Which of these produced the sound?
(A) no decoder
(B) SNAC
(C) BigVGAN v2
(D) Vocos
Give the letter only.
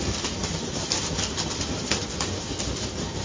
A